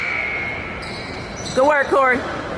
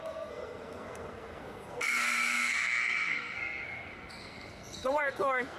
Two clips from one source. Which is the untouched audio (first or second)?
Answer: first